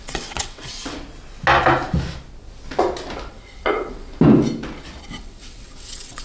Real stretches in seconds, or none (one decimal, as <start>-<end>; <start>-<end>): 0.8-3.3; 4.1-5.0